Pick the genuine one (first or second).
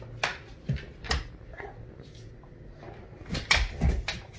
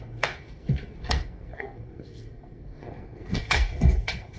first